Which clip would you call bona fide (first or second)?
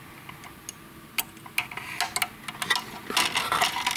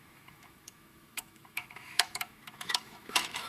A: first